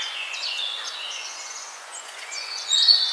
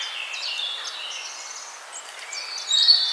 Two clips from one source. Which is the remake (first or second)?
first